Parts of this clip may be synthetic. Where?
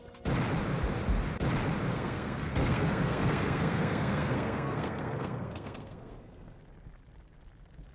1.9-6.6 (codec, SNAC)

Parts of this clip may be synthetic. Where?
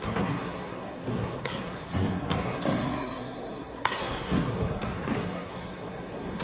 0.0-6.4 (codec, SNAC)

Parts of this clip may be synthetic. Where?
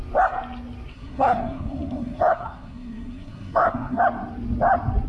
0.9-4.0 (codec, SNAC)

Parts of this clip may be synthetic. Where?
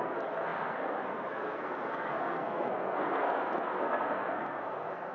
0.0-5.1 (codec, SNAC)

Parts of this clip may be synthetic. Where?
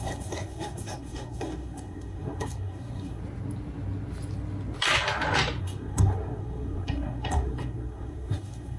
0.0-3.2 (codec, SNAC); 5.6-8.8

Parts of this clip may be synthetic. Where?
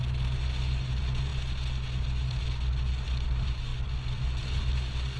none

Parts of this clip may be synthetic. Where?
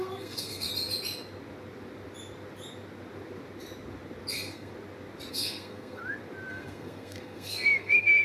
0.0-0.7 (codec, SNAC); 4.3-4.7; 5.3-6.0; 6.5-8.2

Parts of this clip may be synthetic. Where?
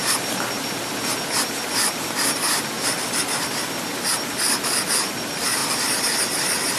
none